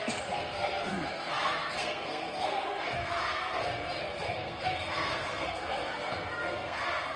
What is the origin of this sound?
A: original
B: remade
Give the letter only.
B